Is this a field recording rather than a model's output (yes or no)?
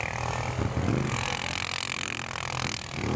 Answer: yes